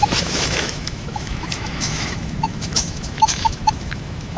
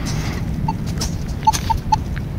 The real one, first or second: second